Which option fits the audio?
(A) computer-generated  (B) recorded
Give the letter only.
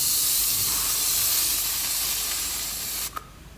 A